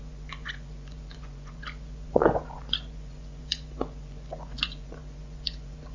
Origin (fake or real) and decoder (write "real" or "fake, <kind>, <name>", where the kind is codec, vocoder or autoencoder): fake, vocoder, Vocos